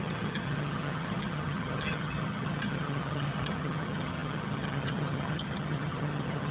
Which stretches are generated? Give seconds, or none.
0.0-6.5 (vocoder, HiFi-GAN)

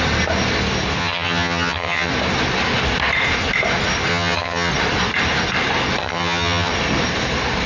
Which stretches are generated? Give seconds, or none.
1.0-2.1 (vocoder, HiFi-GAN); 4.1-4.7; 6.0-6.7

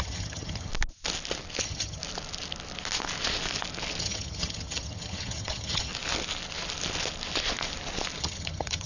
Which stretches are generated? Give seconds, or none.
0.0-0.7 (vocoder, HiFi-GAN); 1.6-2.0; 4.0-5.9; 8.2-8.9

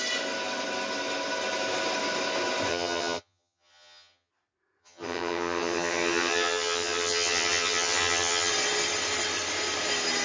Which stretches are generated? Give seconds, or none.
2.7-4.3 (vocoder, HiFi-GAN); 4.8-8.5

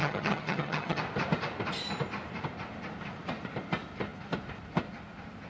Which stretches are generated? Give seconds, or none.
0.0-1.0 (vocoder, HiFi-GAN)

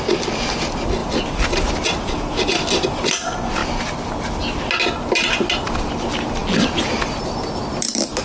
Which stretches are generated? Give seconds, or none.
none

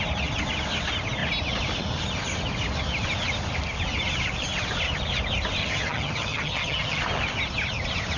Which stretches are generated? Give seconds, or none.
5.6-7.0 (vocoder, HiFi-GAN)